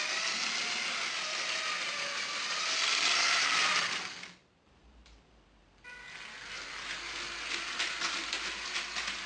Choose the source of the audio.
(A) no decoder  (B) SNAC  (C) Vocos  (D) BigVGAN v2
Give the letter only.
A